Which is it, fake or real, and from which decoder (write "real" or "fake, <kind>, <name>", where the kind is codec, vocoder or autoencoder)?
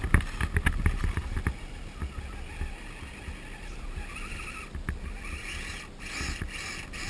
real